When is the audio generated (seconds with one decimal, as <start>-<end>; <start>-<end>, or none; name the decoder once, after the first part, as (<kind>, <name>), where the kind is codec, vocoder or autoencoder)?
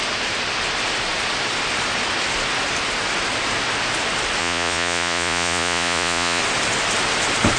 4.4-6.4 (vocoder, Vocos)